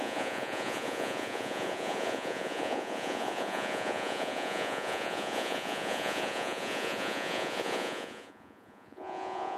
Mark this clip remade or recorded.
remade